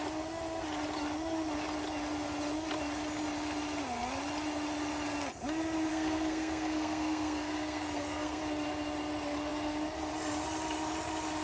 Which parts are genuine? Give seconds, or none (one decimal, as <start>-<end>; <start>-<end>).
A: 0.0-5.9; 8.4-11.4